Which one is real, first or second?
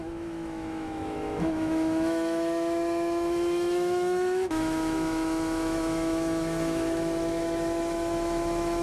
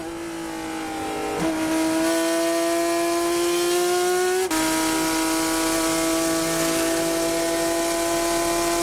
second